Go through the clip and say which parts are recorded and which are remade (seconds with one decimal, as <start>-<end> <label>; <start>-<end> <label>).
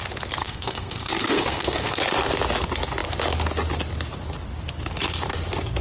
0.0-0.4 recorded; 0.4-2.0 remade; 2.0-5.8 recorded